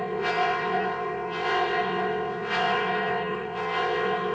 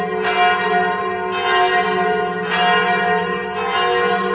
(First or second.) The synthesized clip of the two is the first